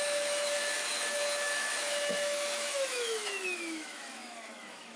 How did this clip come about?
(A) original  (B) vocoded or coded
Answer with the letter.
B